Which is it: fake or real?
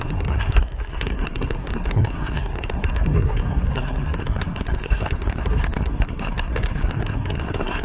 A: fake